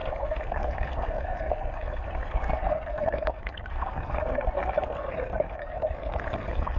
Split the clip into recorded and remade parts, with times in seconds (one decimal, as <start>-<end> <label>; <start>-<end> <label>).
0.0-6.8 remade